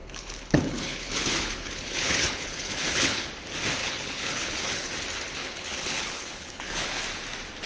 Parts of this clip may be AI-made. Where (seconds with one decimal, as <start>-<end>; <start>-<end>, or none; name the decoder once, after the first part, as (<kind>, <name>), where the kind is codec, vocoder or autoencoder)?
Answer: 0.0-3.3 (codec, HILCodec); 3.8-4.9; 5.4-7.0